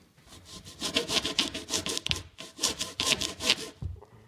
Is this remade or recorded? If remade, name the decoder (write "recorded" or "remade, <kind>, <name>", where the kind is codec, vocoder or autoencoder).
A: remade, vocoder, BigVGAN v2